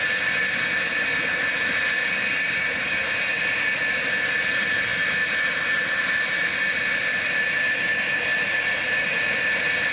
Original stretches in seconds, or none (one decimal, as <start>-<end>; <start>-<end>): none